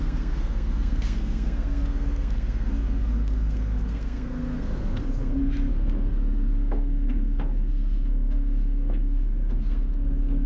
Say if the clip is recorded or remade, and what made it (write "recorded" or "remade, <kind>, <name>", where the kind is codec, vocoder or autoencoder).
remade, codec, SNAC